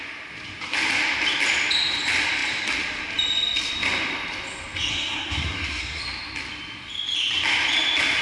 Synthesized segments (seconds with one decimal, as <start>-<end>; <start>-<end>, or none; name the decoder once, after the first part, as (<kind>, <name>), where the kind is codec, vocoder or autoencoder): 4.9-6.0 (codec, SNAC)